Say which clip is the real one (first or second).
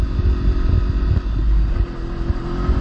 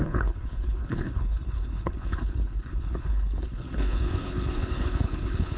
first